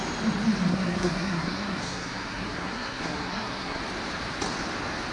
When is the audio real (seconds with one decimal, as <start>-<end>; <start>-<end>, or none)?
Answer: 0.0-0.7; 3.8-5.1